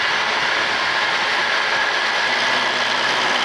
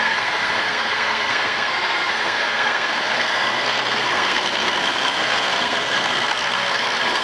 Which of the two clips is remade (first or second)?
second